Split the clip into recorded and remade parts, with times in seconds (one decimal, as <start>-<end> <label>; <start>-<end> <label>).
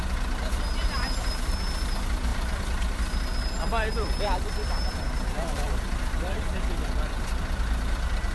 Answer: 0.0-2.3 recorded; 2.3-7.2 remade; 7.2-8.3 recorded